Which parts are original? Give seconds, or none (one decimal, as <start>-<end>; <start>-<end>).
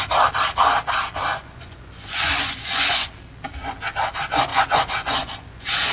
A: 0.0-1.3; 3.1-4.5